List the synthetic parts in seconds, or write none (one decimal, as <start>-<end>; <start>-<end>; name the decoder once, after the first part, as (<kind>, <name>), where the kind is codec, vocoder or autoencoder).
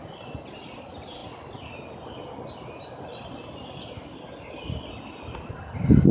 none